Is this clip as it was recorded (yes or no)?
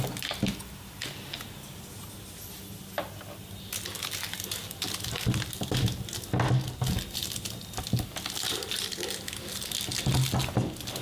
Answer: yes